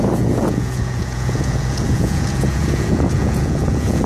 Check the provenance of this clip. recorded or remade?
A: remade